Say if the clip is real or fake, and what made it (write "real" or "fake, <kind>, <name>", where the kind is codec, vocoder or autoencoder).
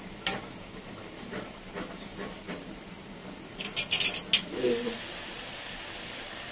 real